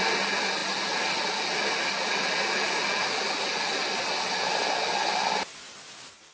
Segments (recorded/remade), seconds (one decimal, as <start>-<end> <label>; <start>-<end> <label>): 0.0-6.3 recorded